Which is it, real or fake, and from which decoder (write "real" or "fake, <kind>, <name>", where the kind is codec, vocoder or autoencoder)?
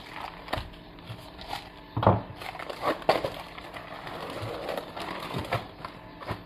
real